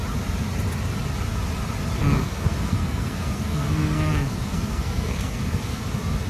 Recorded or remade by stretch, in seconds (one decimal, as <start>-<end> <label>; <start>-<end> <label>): 0.0-2.0 recorded; 2.0-5.8 remade; 5.8-6.3 recorded